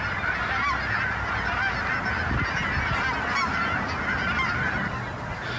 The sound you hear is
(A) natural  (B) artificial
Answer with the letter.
A